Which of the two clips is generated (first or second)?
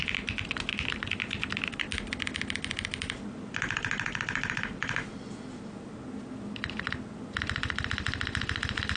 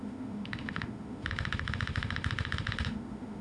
second